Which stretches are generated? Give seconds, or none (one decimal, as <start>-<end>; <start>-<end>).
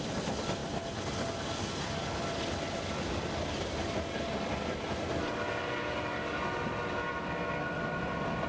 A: none